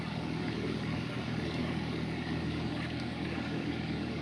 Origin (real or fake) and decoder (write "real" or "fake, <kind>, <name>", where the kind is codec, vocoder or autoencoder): fake, codec, DAC